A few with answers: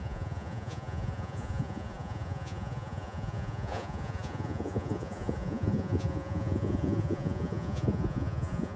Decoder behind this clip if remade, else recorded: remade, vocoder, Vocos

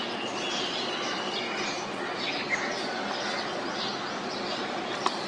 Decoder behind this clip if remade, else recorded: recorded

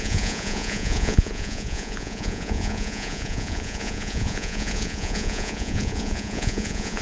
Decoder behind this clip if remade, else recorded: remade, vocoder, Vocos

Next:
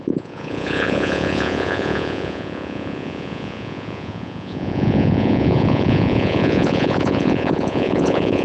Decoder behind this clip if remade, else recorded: remade, vocoder, Vocos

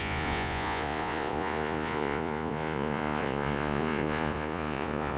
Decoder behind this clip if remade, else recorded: remade, vocoder, Vocos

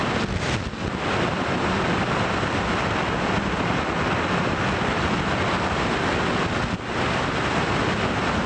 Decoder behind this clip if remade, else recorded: recorded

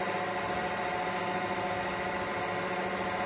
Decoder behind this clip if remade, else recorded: recorded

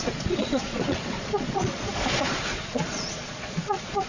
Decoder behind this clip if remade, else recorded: remade, vocoder, Vocos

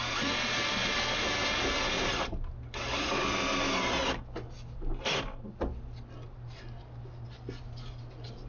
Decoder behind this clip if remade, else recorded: recorded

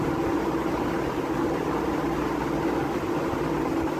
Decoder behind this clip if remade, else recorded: recorded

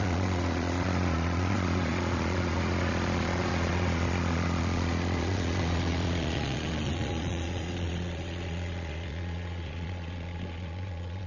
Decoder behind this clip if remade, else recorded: remade, vocoder, Vocos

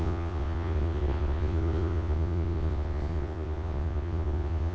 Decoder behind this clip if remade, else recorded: remade, vocoder, Vocos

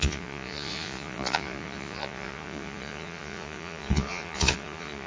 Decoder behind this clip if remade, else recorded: remade, vocoder, Vocos